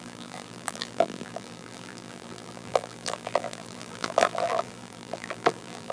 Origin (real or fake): fake